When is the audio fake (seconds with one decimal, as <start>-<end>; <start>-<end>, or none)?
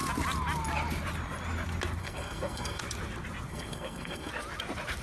2.0-2.8; 3.5-4.3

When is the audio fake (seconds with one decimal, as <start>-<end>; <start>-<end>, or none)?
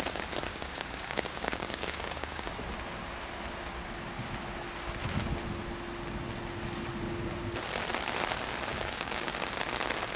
0.5-2.5; 8.7-9.3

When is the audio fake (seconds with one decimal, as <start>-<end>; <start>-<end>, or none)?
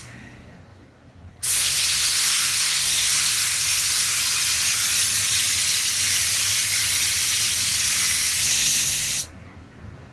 0.0-4.2; 8.4-10.1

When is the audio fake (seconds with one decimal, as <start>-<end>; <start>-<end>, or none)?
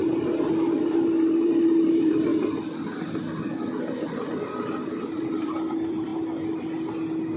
0.0-2.3; 4.9-6.1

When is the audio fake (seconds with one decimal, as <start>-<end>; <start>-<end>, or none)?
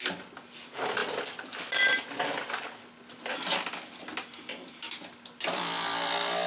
none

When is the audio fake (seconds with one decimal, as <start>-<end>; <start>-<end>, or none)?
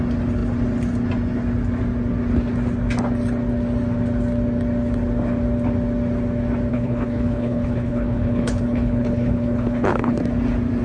6.7-10.2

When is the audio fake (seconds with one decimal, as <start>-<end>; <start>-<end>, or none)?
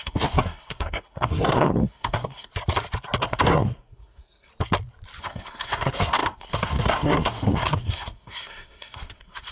0.0-2.5; 3.2-4.5; 5.2-9.5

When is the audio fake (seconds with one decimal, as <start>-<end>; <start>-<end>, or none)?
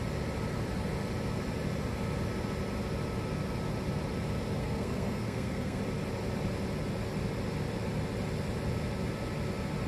4.6-5.8